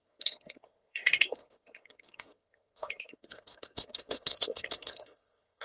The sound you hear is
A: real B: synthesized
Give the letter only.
B